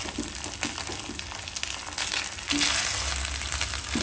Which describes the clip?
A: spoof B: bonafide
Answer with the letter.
B